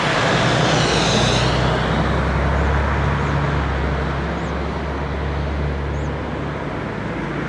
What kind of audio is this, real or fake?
real